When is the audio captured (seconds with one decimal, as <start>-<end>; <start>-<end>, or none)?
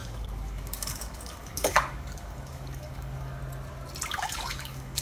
3.4-4.1